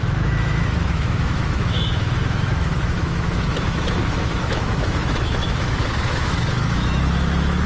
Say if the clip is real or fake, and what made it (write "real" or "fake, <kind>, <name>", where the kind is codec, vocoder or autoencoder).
fake, autoencoder, DAC-VAE